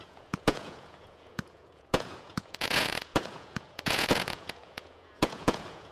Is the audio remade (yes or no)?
yes